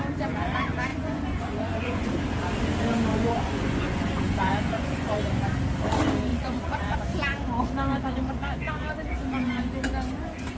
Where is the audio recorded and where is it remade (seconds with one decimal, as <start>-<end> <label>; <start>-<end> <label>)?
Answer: 0.0-0.9 recorded; 0.9-2.1 remade; 2.1-3.1 recorded; 3.1-5.4 remade; 5.4-6.3 recorded; 6.3-7.0 remade; 7.0-10.6 recorded